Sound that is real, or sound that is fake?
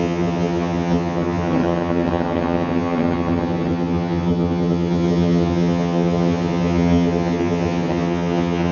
fake